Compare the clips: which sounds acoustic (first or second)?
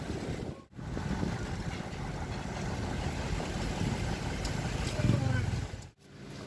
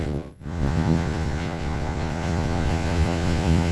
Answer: first